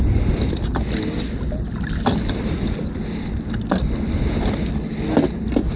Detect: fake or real real